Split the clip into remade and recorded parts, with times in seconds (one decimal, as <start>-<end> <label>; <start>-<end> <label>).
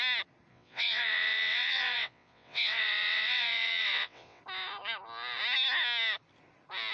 0.0-0.5 recorded; 0.5-4.4 remade; 4.4-6.9 recorded